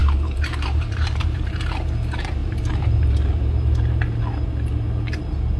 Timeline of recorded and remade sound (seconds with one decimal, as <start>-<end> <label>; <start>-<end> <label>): 0.0-1.9 remade; 1.9-2.4 recorded; 2.4-4.2 remade; 4.2-5.6 recorded